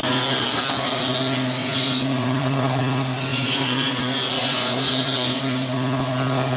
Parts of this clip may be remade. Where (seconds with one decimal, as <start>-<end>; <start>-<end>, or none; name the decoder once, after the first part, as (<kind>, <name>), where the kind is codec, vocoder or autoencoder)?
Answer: 1.6-2.8 (vocoder, Vocos); 3.3-3.9; 4.4-5.4